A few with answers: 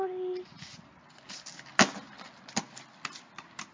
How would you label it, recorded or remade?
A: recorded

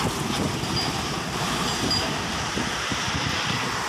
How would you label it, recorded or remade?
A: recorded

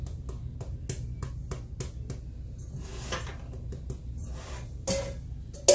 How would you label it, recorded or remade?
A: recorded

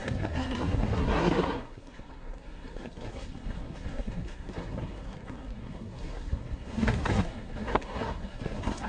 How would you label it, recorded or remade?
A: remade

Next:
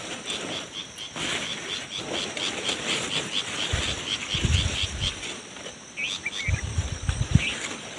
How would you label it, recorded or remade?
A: recorded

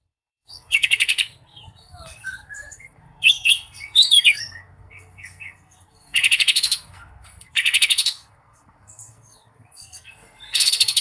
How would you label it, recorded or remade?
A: remade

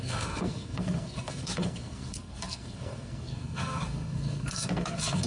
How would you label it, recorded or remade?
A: remade